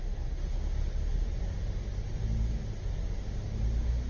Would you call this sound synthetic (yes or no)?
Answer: no